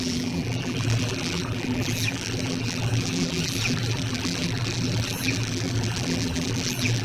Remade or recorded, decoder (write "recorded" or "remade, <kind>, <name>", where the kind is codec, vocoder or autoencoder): remade, vocoder, BigVGAN v2